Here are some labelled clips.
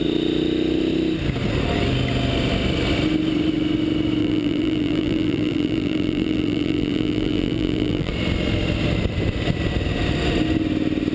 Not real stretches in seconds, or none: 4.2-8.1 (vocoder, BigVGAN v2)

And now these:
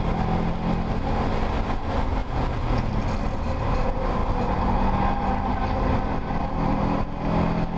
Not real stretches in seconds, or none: 2.2-2.9 (vocoder, Vocos)

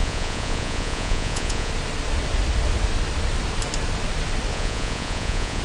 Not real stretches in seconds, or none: 0.0-1.7 (vocoder, Vocos); 4.5-5.6

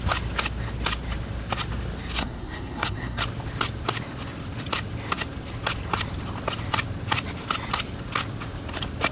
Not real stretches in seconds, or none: 2.2-3.2 (codec, SNAC)

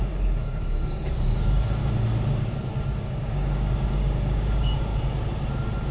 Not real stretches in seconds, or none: 0.0-1.8 (codec, DAC); 3.0-4.9

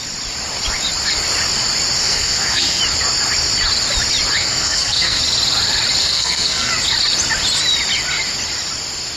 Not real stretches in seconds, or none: 2.0-2.8 (codec, SNAC); 4.4-5.2; 6.0-6.7

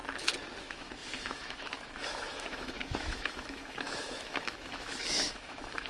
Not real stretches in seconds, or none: 0.6-5.9 (autoencoder, DAC-VAE)

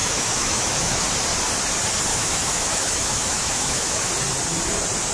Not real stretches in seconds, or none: 0.0-1.1 (autoencoder, DAC-VAE); 2.1-4.1